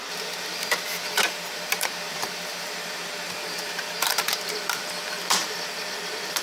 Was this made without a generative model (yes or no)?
no